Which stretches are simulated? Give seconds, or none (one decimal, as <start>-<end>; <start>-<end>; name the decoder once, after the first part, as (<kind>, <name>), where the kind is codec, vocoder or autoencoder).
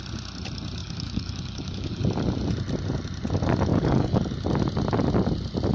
0.8-2.0 (codec, DAC); 3.7-4.2